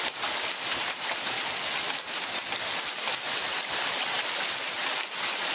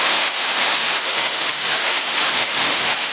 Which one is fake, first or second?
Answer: second